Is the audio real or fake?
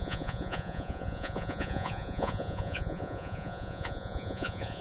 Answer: fake